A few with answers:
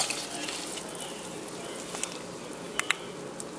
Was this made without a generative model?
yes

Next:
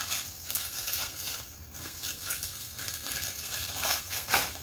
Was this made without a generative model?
no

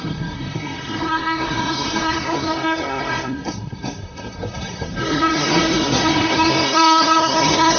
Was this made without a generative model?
no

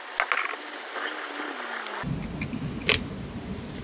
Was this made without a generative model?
yes